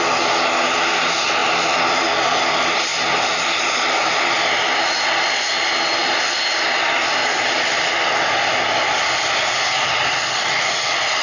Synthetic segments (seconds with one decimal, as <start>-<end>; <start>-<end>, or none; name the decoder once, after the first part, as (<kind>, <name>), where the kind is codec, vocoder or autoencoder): 1.4-2.4 (vocoder, BigVGAN v2); 2.9-5.3; 6.0-7.8